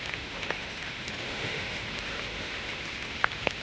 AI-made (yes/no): yes